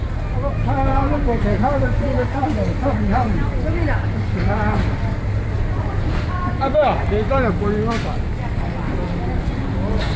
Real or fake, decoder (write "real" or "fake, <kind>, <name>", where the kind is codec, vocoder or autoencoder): real